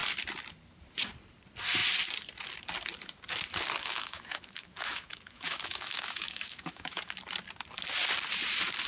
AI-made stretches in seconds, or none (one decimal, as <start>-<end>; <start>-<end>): 3.8-7.0